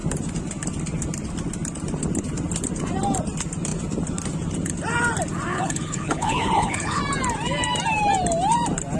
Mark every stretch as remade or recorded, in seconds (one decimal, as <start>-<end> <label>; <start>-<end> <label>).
0.0-5.5 recorded; 5.5-7.0 remade; 7.0-9.0 recorded

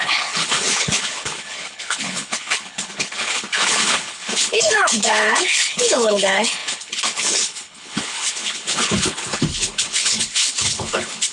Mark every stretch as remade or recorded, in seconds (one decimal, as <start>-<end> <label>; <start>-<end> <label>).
0.0-11.3 remade